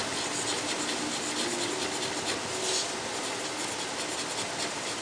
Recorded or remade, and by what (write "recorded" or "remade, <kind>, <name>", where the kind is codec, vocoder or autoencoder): recorded